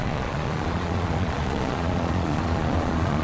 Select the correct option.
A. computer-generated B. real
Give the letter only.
A